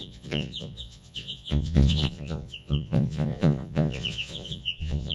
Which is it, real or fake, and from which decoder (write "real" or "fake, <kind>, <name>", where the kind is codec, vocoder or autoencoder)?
fake, vocoder, Vocos